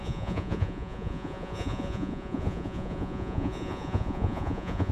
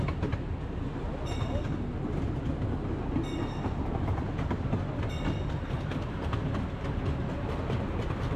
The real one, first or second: second